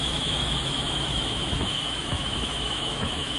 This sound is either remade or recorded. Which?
remade